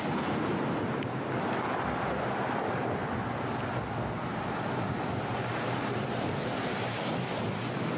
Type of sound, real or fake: real